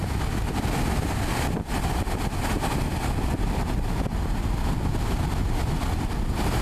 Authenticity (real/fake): real